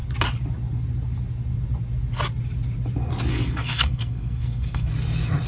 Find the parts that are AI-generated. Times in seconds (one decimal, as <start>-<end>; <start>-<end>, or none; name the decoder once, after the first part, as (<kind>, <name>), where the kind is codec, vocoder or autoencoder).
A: 3.3-4.9 (codec, SNAC)